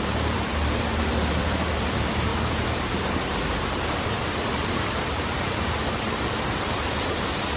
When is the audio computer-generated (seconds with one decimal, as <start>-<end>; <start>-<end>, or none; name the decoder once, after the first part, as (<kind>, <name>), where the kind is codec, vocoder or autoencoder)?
0.0-2.3 (vocoder, BigVGAN v2); 3.1-7.6